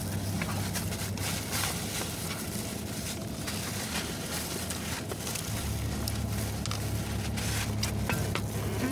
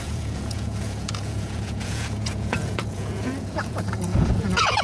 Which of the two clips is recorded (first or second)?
first